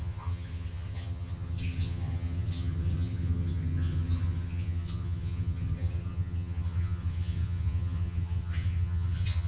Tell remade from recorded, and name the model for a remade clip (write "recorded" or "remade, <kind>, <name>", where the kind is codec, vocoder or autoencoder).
remade, vocoder, HiFi-GAN